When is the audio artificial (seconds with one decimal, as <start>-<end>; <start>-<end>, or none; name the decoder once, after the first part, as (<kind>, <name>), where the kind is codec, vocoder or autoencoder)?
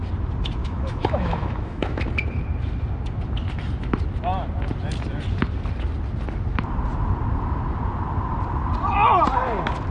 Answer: 0.6-2.0 (autoencoder, DAC-VAE)